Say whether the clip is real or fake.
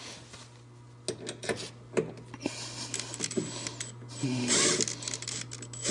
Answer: real